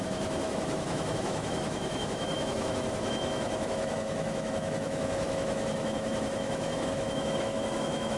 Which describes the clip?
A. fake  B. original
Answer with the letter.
A